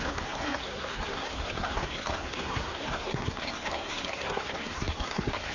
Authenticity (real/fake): fake